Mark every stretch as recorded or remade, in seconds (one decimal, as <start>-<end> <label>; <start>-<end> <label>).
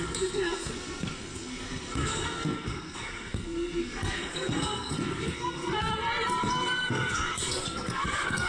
0.0-5.9 remade; 5.9-6.4 recorded; 6.4-8.5 remade